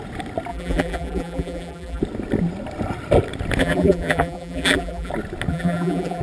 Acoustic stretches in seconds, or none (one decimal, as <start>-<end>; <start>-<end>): 0.0-0.5; 2.0-3.6; 5.1-5.5